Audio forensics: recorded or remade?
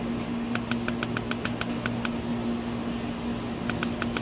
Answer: recorded